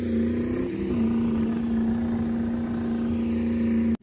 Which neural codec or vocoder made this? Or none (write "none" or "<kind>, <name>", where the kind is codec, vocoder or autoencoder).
none